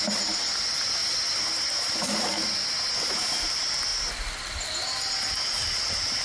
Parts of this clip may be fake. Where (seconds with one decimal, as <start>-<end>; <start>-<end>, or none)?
0.0-1.0; 3.4-3.9; 5.1-6.2